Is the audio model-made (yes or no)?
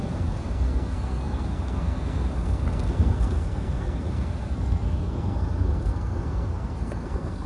yes